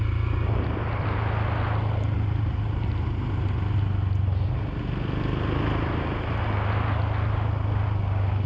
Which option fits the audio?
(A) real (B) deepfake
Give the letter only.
A